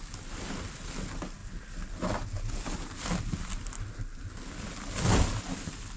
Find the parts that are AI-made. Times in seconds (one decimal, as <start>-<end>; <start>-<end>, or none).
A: none